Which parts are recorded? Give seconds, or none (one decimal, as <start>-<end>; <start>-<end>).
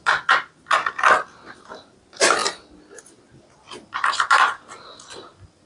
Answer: 0.0-5.7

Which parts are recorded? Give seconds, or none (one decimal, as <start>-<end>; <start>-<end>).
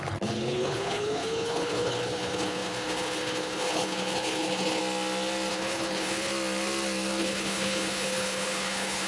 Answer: 4.8-5.5; 6.3-7.2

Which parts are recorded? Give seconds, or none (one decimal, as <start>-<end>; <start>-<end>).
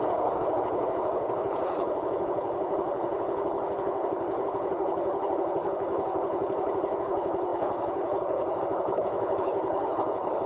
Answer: none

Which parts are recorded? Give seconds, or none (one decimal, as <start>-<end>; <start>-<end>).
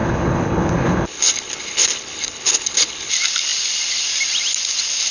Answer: 3.1-5.1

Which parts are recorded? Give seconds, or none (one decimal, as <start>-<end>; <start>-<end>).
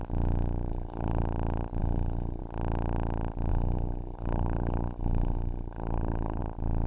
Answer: 0.0-0.7; 1.2-1.8; 2.4-3.5; 6.4-6.9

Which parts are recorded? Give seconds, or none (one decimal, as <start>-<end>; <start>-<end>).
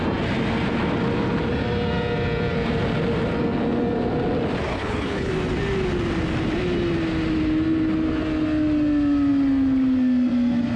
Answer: 0.0-4.7; 5.3-10.8